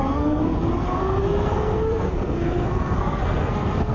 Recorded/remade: remade